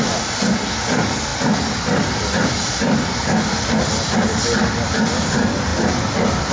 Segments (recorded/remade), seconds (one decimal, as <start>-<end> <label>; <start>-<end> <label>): 0.0-6.5 recorded